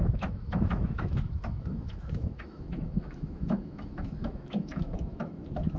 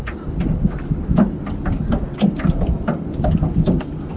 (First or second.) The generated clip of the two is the first